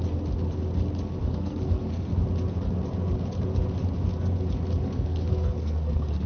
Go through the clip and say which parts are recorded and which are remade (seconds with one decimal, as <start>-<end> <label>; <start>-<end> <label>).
0.0-1.2 recorded; 1.2-2.1 remade; 2.1-4.8 recorded; 4.8-6.3 remade